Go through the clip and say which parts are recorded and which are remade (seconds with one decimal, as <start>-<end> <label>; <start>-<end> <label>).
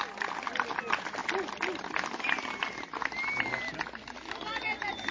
0.0-5.1 recorded